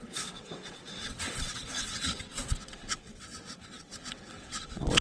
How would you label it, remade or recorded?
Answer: remade